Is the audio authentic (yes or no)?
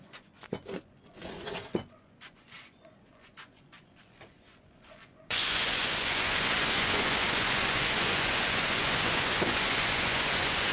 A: no